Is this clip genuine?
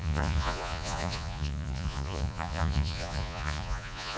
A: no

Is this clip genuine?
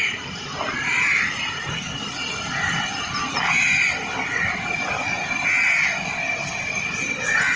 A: yes